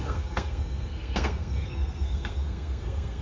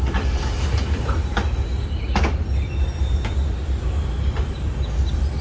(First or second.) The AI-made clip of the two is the first